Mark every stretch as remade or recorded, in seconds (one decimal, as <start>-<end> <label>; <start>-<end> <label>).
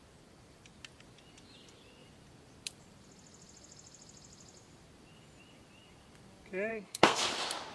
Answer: 0.0-6.7 recorded; 6.7-7.3 remade; 7.3-7.7 recorded